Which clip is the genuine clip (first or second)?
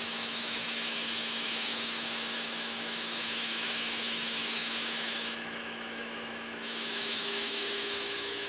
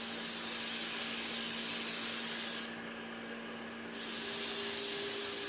second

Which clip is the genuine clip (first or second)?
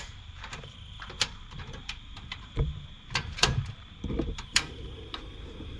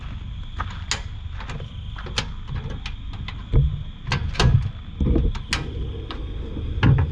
second